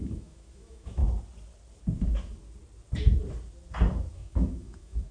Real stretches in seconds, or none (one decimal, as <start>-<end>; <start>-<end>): 1.0-4.1